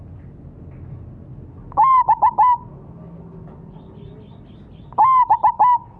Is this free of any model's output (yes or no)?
yes